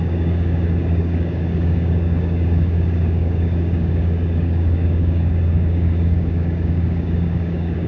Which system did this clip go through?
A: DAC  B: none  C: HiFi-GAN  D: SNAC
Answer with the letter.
A